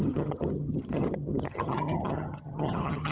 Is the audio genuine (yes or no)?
no